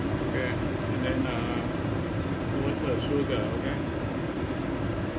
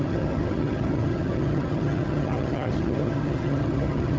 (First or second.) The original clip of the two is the first